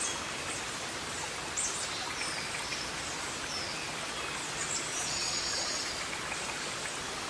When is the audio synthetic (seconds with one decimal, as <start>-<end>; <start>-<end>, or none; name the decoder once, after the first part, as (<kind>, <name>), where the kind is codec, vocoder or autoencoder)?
4.9-5.8 (vocoder, Vocos)